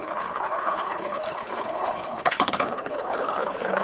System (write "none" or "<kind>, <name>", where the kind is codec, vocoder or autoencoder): codec, HILCodec